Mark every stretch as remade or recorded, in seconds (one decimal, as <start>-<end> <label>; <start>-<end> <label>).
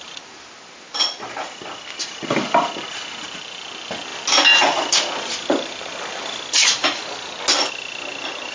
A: 0.0-8.5 recorded